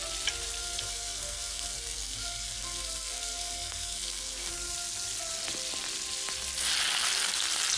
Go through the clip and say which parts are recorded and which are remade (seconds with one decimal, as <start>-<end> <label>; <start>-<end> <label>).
0.0-0.6 recorded; 0.6-4.5 remade; 4.5-7.8 recorded